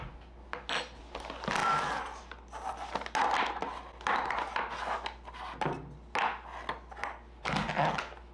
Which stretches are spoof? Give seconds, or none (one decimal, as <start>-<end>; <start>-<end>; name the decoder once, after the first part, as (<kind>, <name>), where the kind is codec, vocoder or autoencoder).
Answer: none